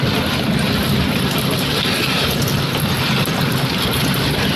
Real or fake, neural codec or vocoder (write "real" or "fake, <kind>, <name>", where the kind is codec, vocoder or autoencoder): real